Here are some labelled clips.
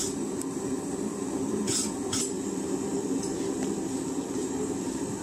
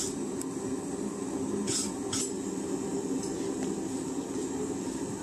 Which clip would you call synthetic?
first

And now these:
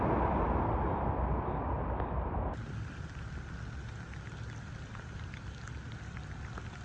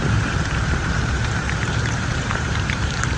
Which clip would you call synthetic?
second